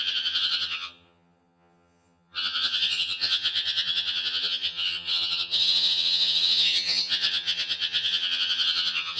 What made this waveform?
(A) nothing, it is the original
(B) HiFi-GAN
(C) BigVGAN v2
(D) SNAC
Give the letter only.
B